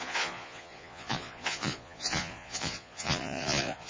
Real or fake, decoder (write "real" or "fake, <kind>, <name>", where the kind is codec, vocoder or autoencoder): fake, vocoder, Vocos